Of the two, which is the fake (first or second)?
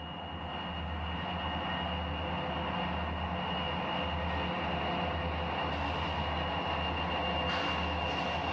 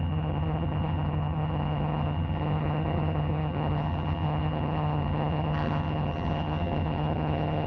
second